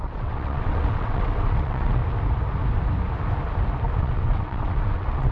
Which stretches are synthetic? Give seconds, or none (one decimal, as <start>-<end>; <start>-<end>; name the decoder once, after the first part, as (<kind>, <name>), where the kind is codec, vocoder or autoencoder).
0.0-2.0 (vocoder, WaveNeXt); 4.0-5.3